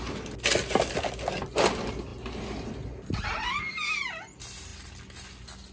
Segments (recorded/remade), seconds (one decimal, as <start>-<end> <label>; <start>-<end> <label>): 0.0-5.7 recorded